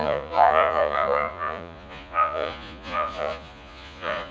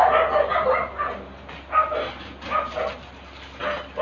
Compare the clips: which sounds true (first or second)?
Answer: second